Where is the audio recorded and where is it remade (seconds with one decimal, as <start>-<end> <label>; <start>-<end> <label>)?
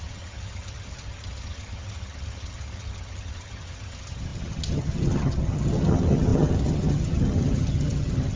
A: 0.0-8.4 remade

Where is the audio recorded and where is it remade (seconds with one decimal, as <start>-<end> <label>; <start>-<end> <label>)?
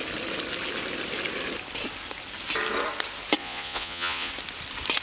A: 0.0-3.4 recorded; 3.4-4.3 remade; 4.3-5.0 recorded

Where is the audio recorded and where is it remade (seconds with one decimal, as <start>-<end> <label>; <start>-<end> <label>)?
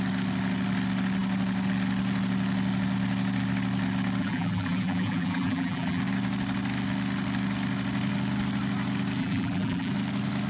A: 0.0-4.2 recorded; 4.2-6.0 remade; 6.0-9.2 recorded; 9.2-9.9 remade; 9.9-10.5 recorded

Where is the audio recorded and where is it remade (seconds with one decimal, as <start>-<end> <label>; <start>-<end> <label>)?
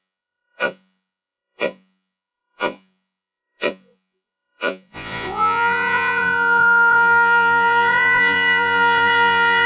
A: 0.0-9.7 remade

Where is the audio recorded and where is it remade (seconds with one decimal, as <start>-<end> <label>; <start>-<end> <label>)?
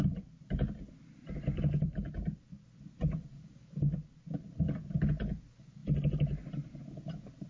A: 0.0-7.5 recorded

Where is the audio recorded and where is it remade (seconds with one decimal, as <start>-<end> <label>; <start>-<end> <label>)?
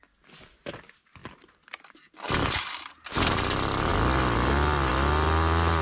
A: 0.0-1.2 recorded; 1.2-2.9 remade; 2.9-3.9 recorded; 3.9-4.9 remade; 4.9-5.8 recorded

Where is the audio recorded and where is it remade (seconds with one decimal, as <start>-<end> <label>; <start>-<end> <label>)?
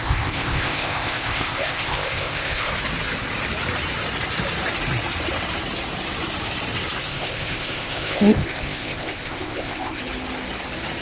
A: 0.0-2.7 remade; 2.7-7.0 recorded; 7.0-10.0 remade; 10.0-11.0 recorded